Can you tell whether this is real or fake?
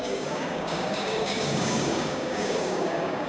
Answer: fake